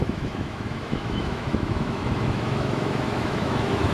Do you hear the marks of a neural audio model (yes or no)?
yes